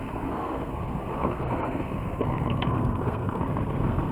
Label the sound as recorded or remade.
remade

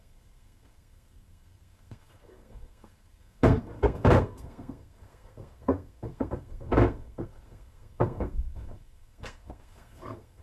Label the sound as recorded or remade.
remade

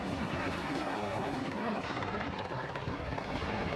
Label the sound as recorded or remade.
remade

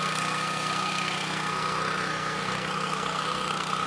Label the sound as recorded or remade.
remade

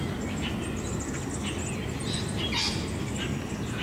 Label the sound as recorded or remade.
recorded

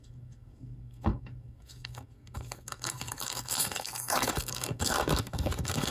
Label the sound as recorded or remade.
remade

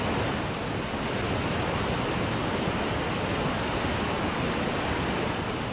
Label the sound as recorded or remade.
recorded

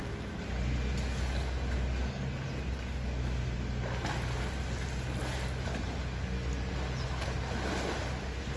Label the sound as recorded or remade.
recorded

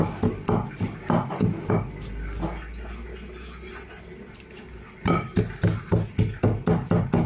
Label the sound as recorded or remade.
recorded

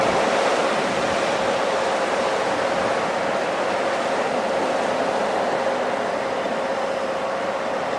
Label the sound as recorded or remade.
recorded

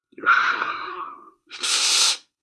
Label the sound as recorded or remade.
remade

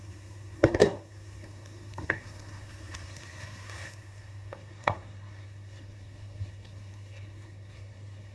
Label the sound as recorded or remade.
remade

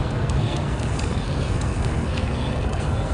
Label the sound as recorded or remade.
remade